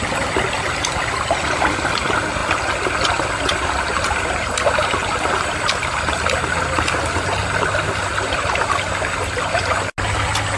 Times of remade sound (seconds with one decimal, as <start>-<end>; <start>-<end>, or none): none